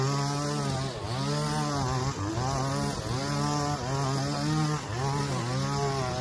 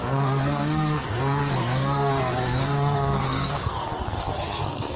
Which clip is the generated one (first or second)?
second